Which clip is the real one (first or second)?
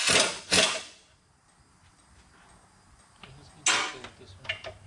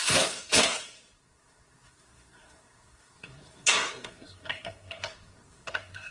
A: first